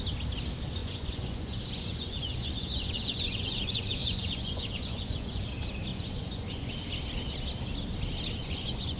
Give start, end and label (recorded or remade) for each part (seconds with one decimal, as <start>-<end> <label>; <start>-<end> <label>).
0.0-0.8 recorded; 0.8-5.4 remade; 5.4-5.9 recorded; 5.9-6.7 remade; 6.7-8.4 recorded; 8.4-9.0 remade